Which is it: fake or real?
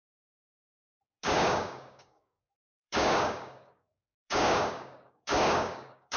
fake